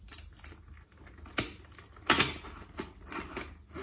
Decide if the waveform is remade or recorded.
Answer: recorded